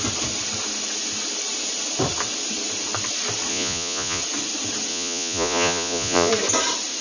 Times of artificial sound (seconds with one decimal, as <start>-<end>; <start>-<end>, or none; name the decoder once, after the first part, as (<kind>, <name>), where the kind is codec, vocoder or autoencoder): 3.5-4.2 (vocoder, Vocos); 4.9-6.3